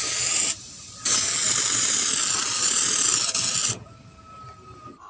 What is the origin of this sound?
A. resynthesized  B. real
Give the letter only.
B